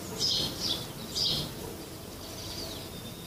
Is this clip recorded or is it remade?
recorded